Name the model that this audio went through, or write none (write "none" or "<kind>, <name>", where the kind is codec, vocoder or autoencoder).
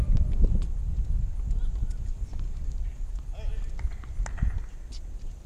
none